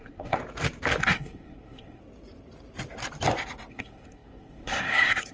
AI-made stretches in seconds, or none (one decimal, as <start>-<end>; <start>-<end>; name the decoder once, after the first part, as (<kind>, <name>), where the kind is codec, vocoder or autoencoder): 0.0-0.4 (codec, SNAC); 1.0-2.0; 3.7-5.3